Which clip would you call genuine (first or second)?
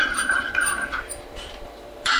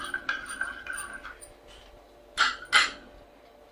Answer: second